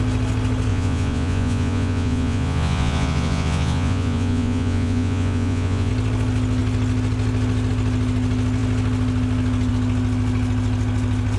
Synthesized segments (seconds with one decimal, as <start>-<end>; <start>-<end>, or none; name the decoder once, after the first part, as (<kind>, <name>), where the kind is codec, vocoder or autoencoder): 0.7-5.9 (vocoder, Vocos)